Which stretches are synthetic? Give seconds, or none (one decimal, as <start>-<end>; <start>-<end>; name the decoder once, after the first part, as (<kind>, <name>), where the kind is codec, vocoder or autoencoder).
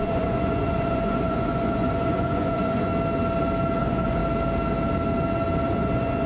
0.0-2.9 (vocoder, Vocos); 3.8-4.2; 5.7-6.3